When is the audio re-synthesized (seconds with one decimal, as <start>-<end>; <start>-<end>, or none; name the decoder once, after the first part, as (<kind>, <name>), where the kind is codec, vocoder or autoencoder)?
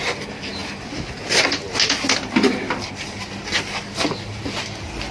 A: none